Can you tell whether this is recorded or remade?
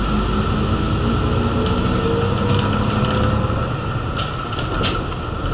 recorded